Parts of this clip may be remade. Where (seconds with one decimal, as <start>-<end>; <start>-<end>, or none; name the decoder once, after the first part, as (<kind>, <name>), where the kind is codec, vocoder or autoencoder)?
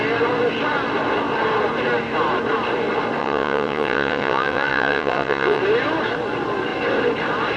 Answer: 3.2-5.6 (vocoder, WaveNeXt)